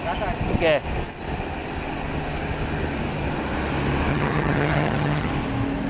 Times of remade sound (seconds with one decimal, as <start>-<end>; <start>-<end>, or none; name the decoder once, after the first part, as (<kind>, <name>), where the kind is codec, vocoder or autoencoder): 4.1-5.3 (vocoder, HiFi-GAN)